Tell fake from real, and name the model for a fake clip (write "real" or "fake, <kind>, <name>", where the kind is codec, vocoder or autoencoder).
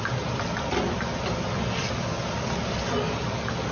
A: real